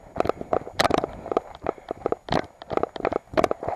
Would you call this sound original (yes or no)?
yes